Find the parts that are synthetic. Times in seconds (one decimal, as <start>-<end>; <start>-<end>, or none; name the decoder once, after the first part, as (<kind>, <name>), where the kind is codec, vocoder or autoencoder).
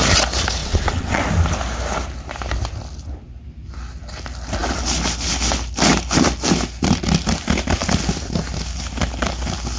0.6-1.2 (vocoder, WaveNeXt)